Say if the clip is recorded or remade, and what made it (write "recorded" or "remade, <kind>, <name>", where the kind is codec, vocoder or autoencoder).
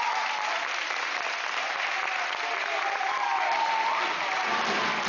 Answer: recorded